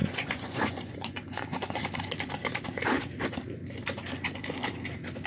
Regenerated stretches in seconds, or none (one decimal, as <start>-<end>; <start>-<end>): 0.0-1.8